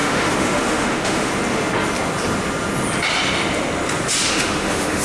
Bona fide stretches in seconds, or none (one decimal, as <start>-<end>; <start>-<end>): 1.3-4.3